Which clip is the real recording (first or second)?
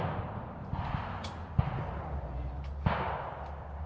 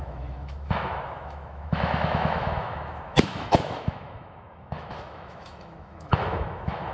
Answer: first